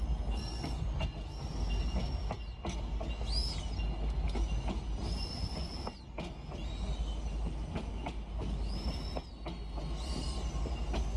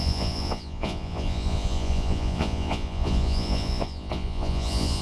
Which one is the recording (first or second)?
first